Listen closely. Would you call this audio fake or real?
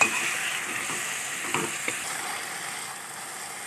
real